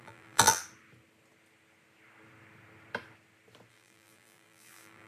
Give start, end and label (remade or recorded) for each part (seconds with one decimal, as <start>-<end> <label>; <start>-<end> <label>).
0.0-0.6 remade; 0.6-3.7 recorded; 3.7-5.1 remade